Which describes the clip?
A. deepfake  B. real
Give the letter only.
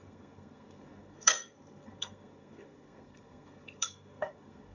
A